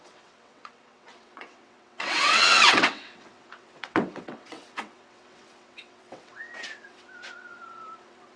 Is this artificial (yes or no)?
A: yes